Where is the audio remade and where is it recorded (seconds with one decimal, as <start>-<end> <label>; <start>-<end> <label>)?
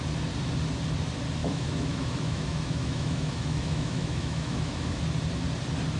0.0-1.4 recorded; 1.4-5.0 remade; 5.0-6.0 recorded